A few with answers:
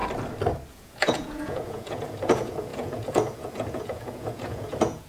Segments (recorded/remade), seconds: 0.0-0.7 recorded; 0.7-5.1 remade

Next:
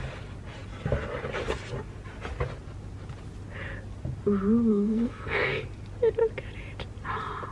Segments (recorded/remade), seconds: 0.0-4.7 recorded; 4.7-5.6 remade; 5.6-7.5 recorded

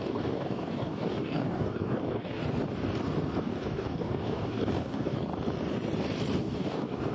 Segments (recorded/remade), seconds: 0.0-2.4 remade; 2.4-3.4 recorded; 3.4-5.3 remade; 5.3-6.4 recorded; 6.4-7.1 remade

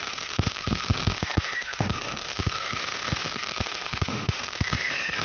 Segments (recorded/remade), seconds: 0.0-5.2 remade

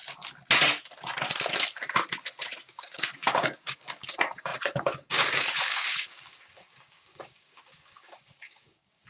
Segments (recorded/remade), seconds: 0.0-2.6 recorded; 2.6-9.1 remade

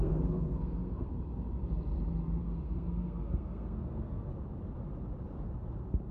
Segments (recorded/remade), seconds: 0.0-1.1 remade; 1.1-2.4 recorded; 2.4-4.3 remade; 4.3-6.1 recorded

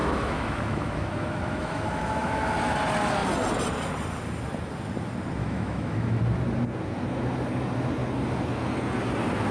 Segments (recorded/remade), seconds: 0.0-2.5 remade; 2.5-5.4 recorded; 5.4-6.2 remade; 6.2-9.5 recorded